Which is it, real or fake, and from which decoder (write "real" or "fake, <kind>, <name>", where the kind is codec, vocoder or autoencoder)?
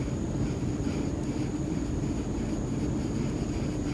real